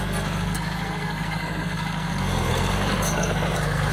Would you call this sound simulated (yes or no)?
yes